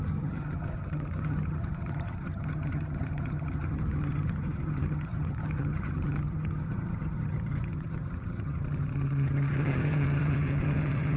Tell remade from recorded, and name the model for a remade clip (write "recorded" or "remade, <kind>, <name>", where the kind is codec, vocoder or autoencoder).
remade, vocoder, HiFi-GAN